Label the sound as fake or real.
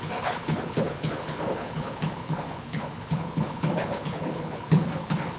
fake